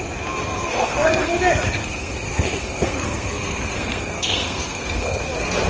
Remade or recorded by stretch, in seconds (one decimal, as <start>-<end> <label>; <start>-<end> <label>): 0.0-0.4 recorded; 0.4-1.4 remade; 1.4-1.8 recorded; 1.8-5.2 remade; 5.2-5.7 recorded